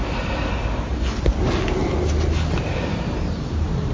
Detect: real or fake real